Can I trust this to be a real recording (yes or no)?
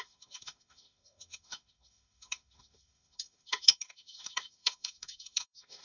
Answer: no